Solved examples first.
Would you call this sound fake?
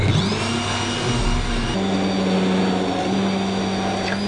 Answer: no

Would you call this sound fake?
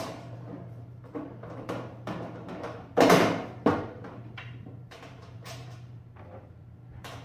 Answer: yes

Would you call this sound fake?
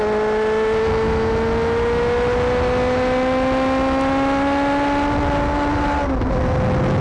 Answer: no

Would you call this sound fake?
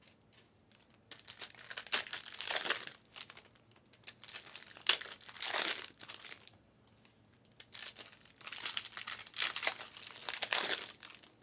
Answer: no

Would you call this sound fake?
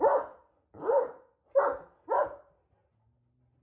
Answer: no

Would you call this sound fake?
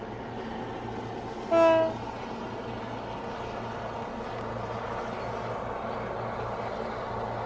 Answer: no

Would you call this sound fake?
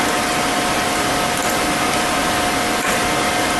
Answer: no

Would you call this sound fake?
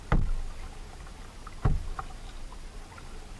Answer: no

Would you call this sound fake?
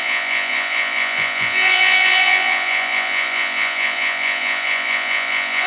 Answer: yes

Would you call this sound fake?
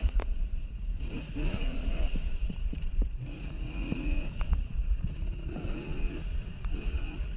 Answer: yes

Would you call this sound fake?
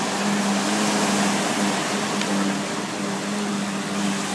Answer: no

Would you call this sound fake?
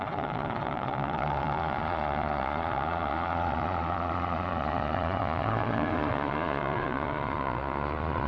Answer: yes